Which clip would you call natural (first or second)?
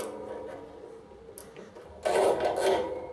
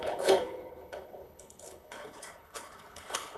first